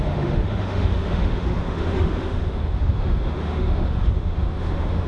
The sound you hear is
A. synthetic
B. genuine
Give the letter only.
A